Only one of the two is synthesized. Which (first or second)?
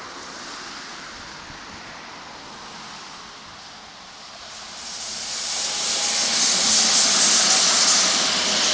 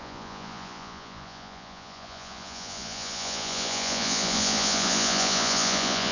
second